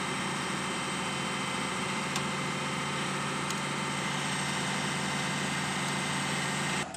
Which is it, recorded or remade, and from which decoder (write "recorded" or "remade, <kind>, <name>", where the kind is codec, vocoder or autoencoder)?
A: recorded